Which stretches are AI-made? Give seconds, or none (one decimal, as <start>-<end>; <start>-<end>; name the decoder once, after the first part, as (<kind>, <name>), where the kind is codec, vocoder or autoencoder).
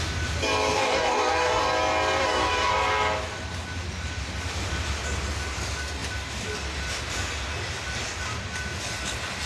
0.7-1.6 (codec, DAC); 2.2-2.7